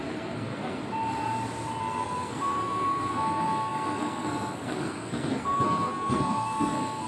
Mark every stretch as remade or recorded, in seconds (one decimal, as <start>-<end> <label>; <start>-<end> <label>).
0.0-0.8 remade; 0.8-1.8 recorded; 1.8-7.1 remade